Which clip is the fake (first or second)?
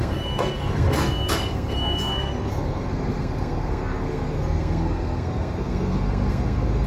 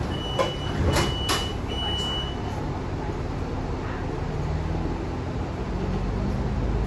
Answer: first